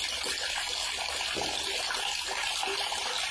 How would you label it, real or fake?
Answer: real